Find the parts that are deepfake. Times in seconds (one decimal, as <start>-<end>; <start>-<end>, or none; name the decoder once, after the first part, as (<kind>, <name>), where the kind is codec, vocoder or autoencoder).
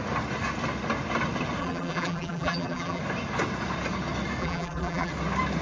1.6-3.0 (vocoder, BigVGAN v2); 4.4-5.1